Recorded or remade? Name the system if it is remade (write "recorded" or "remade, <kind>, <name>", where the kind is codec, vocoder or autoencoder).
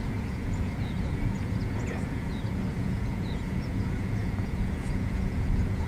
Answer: remade, vocoder, Vocos